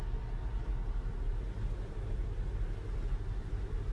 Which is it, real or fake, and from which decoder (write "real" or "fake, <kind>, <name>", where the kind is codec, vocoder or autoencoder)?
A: real